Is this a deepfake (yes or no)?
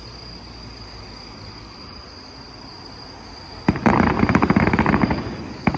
no